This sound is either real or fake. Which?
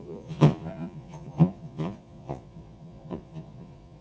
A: fake